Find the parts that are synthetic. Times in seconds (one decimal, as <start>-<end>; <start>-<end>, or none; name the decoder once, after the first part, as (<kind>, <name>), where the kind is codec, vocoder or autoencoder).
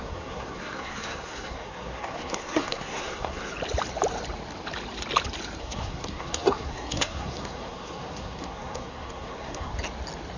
0.0-3.5 (codec, SNAC); 5.6-9.7